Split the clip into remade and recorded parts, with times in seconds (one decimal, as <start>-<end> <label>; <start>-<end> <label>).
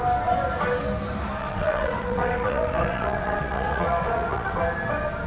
0.0-1.4 recorded; 1.4-4.6 remade; 4.6-5.3 recorded